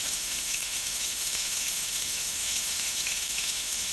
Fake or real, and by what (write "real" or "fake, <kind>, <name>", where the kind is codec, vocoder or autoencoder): fake, autoencoder, DAC-VAE